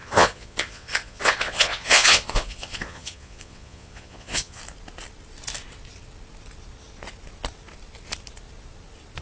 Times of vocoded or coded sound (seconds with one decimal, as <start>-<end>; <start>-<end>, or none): 0.0-4.6